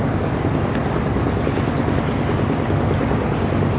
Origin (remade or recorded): recorded